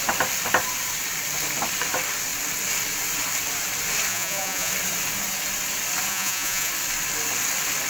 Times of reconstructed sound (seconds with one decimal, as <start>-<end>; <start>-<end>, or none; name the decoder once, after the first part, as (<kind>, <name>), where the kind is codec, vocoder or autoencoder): 4.1-4.7 (vocoder, Vocos); 6.1-6.7